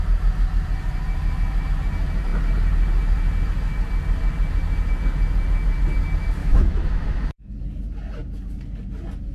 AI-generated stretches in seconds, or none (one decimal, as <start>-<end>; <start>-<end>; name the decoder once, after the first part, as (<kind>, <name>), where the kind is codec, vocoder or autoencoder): 6.4-7.5 (autoencoder, DAC-VAE)